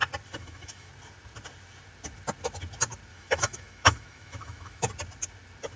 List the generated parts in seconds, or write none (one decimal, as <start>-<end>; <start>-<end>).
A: 0.4-0.9; 3.1-4.9